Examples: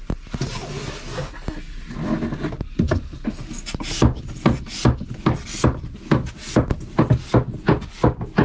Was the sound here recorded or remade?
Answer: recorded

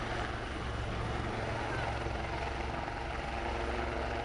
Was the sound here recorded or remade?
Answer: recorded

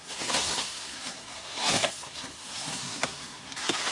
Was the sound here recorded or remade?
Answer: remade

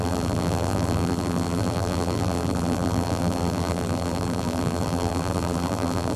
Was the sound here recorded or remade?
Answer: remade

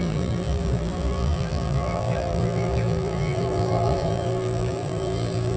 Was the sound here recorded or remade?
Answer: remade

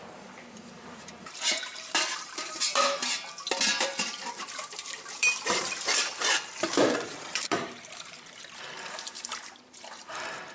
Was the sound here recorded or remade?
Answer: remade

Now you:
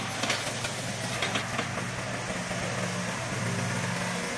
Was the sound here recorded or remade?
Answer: recorded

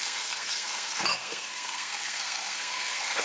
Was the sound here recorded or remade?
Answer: remade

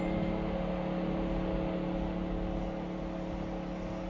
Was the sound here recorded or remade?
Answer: recorded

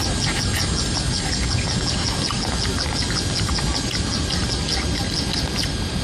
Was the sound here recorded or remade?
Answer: recorded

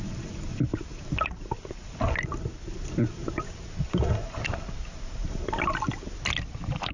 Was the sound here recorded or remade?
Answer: recorded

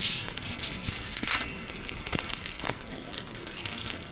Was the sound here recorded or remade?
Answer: remade